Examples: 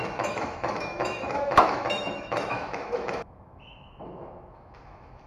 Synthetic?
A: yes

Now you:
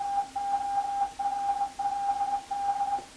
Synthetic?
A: no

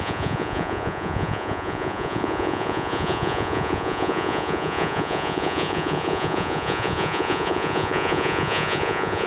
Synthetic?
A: yes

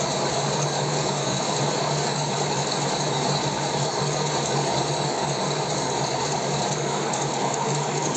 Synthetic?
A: yes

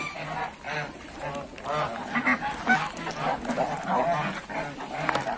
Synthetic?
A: no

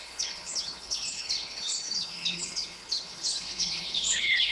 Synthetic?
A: yes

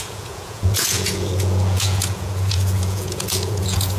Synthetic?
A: yes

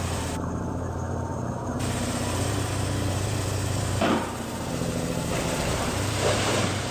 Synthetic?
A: yes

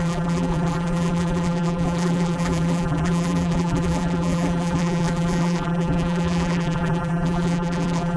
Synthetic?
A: yes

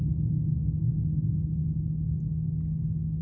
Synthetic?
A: no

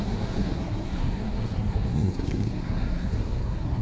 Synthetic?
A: yes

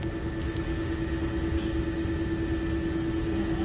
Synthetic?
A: no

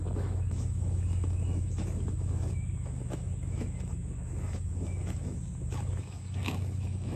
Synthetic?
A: yes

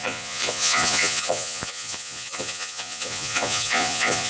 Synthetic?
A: yes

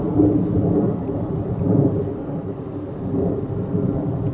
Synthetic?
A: no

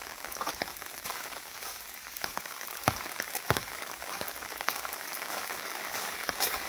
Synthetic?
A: yes